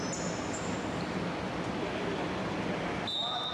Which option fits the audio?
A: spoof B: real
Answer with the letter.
B